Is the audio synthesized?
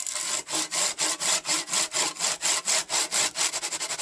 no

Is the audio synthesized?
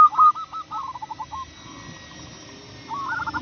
no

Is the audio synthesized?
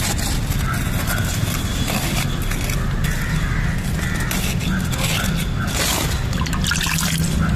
no